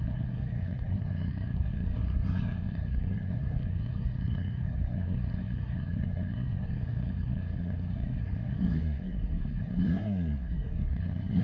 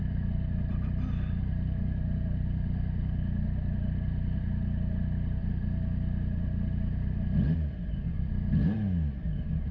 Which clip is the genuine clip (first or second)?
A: second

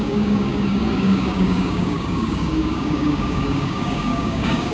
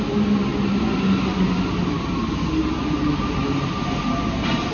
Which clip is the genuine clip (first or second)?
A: second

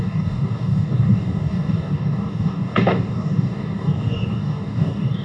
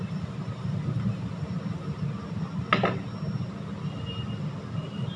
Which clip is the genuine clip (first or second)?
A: second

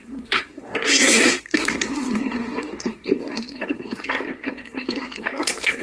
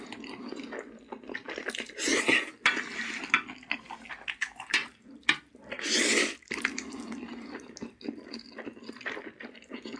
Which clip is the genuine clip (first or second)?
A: second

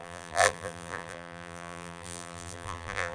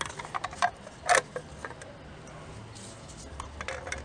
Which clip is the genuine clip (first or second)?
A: second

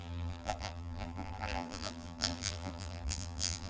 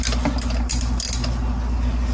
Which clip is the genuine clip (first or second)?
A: second